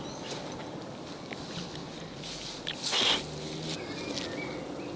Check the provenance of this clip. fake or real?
real